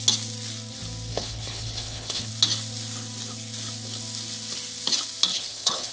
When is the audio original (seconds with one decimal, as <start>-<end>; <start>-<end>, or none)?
0.0-1.1; 2.3-5.3